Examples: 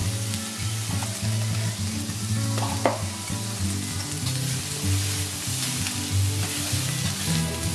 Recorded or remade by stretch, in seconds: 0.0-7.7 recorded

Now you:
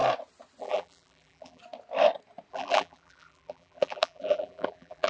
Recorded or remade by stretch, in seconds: 0.0-0.6 recorded; 0.6-1.6 remade; 1.6-2.5 recorded; 2.5-5.1 remade

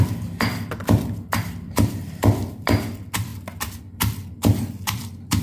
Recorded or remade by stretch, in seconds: 0.0-3.3 remade; 3.3-3.8 recorded; 3.8-5.4 remade

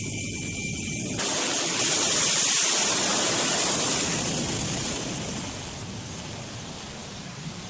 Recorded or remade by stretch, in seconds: 0.0-0.6 recorded; 0.6-2.7 remade; 2.7-3.1 recorded; 3.1-5.4 remade; 5.4-7.0 recorded; 7.0-7.7 remade

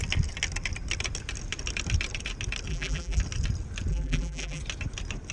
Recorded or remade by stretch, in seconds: 0.0-2.7 recorded; 2.7-3.2 remade; 3.2-3.9 recorded; 3.9-4.6 remade; 4.6-5.3 recorded

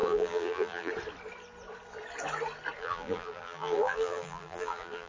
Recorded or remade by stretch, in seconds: 0.0-0.9 remade; 0.9-2.8 recorded; 2.8-5.1 remade

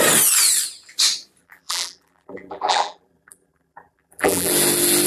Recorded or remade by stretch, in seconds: 0.0-1.4 recorded; 1.4-4.5 remade; 4.5-5.1 recorded

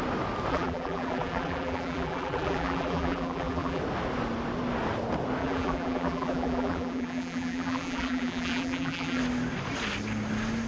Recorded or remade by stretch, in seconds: 0.0-0.5 recorded; 0.5-3.8 remade; 3.8-5.4 recorded; 5.4-9.2 remade; 9.2-10.7 recorded